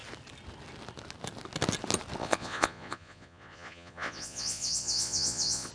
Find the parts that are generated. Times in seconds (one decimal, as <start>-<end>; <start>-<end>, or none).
2.2-5.7